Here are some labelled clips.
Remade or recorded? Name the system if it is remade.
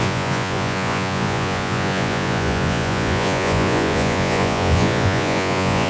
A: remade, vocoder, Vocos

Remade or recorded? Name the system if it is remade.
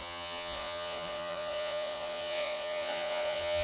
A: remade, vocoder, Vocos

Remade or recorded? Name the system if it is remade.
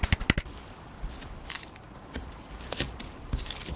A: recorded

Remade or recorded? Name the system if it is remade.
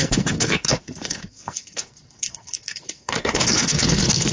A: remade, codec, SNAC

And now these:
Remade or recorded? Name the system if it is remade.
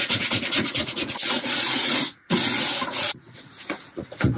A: remade, vocoder, Vocos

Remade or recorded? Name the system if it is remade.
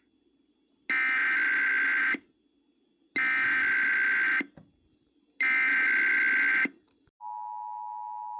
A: recorded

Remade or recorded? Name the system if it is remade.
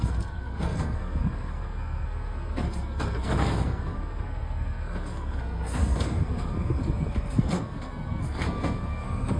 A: remade, codec, SNAC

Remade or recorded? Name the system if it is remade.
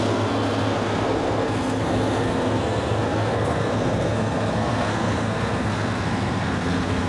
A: remade, codec, SNAC